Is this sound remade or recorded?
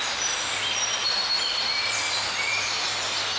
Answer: recorded